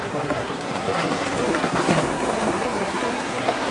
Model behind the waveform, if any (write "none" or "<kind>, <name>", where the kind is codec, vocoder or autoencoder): codec, SNAC